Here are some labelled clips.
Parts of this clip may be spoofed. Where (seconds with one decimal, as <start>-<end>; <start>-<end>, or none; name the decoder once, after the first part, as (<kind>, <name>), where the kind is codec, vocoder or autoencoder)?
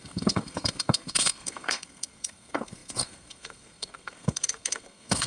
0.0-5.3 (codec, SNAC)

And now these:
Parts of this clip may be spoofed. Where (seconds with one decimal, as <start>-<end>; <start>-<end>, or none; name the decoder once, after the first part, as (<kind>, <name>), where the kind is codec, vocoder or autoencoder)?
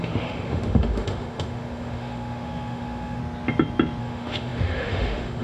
0.0-3.2 (autoencoder, DAC-VAE); 4.0-5.4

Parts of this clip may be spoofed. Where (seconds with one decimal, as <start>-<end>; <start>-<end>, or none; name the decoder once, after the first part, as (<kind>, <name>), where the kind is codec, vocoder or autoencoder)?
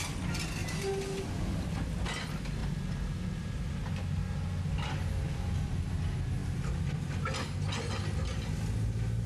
none